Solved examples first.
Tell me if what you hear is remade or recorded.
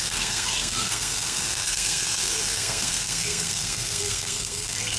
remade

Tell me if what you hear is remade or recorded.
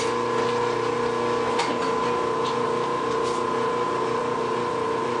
recorded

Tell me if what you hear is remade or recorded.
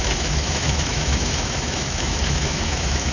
remade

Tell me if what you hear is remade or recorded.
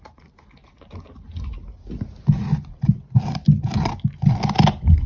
recorded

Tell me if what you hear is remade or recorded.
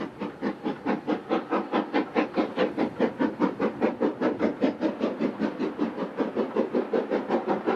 recorded